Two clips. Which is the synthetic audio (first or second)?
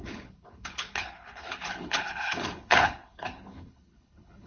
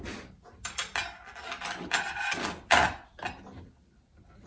first